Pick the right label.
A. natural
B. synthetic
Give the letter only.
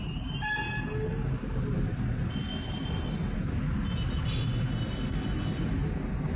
A